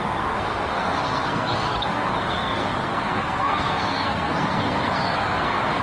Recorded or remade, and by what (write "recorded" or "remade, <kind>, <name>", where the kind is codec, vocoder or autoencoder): remade, codec, SNAC